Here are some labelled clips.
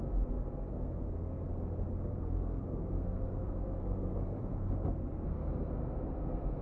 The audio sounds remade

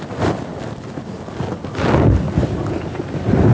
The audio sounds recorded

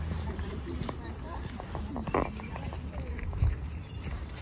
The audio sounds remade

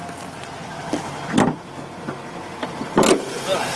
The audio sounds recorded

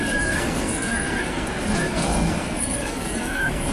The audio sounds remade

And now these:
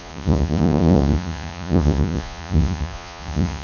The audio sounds remade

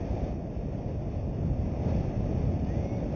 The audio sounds recorded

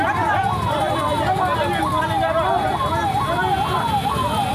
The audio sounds recorded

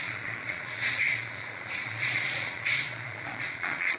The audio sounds remade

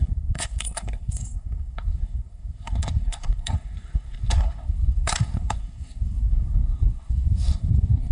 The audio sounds remade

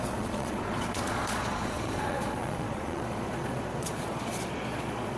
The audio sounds remade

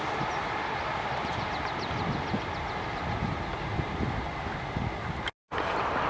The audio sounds recorded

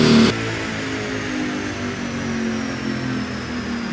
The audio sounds recorded